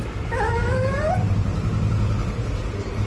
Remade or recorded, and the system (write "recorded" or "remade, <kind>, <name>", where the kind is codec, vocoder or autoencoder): recorded